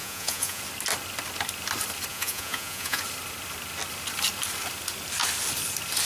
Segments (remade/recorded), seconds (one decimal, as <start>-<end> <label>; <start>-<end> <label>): 0.0-0.6 remade; 0.6-2.1 recorded; 2.1-3.0 remade; 3.0-6.0 recorded